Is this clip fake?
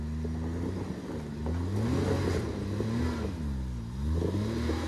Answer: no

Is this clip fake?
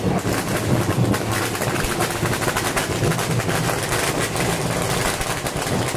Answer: no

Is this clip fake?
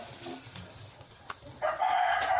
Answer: no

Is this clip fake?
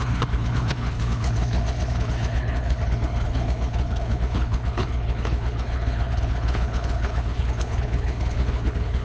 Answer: yes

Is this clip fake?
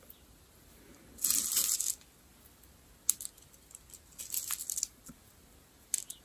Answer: no